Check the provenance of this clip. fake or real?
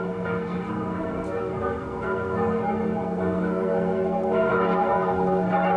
fake